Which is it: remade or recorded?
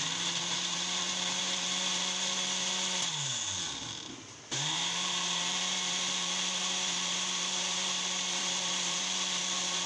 remade